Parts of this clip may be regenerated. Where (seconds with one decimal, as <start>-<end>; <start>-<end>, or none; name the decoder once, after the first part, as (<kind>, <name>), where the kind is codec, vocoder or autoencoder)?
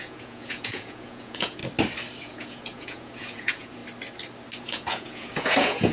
0.0-1.6 (vocoder, Vocos); 2.2-3.8; 4.6-5.9